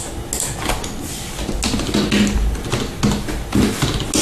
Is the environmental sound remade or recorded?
recorded